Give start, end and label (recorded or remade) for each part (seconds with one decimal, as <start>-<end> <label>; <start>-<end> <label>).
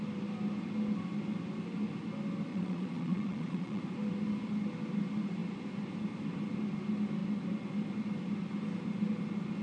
0.0-2.5 recorded; 2.5-3.8 remade; 3.8-9.6 recorded